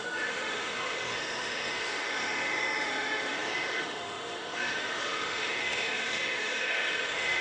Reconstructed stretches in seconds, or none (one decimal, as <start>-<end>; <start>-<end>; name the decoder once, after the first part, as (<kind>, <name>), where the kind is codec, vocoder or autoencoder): 0.0-7.4 (autoencoder, DAC-VAE)

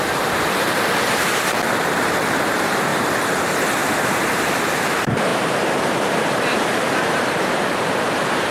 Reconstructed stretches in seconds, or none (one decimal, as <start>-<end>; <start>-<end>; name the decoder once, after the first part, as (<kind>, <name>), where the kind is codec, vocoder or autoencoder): 0.0-2.9 (vocoder, BigVGAN v2); 3.8-8.5

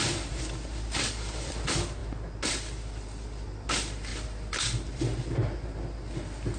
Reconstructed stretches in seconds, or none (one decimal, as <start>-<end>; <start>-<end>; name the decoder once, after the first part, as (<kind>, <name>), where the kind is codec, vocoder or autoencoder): 4.1-5.0 (vocoder, BigVGAN v2)

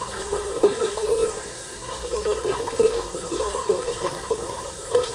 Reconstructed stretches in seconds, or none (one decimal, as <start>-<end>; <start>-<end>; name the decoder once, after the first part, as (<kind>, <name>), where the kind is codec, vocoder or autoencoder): 0.0-5.1 (codec, SNAC)

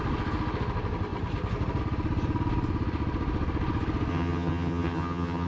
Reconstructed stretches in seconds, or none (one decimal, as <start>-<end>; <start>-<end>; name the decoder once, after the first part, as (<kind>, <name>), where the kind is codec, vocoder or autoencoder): 4.1-5.5 (vocoder, HiFi-GAN)

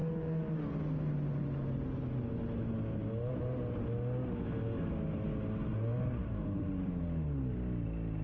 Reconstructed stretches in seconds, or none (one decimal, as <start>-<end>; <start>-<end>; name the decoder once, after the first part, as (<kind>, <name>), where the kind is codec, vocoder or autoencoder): 5.7-7.0 (vocoder, BigVGAN v2)

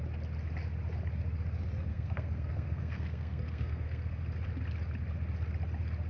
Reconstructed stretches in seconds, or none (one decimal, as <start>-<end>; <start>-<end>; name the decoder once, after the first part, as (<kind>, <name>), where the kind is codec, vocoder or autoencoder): 1.9-4.2 (codec, SNAC)